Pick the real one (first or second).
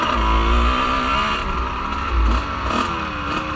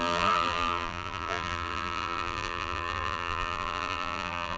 first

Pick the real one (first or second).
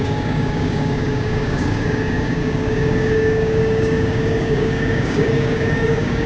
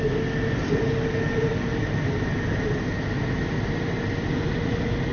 second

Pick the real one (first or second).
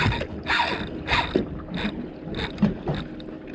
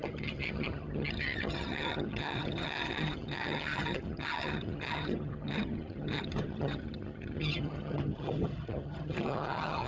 first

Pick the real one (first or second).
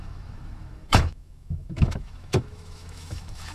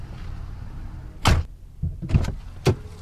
second